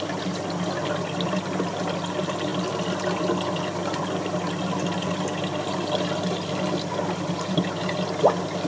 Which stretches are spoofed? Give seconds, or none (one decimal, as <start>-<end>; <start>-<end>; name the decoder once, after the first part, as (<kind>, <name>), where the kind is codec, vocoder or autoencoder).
none